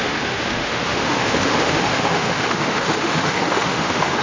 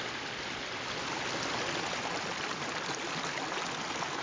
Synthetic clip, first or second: first